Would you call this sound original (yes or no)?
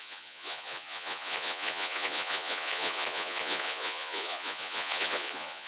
no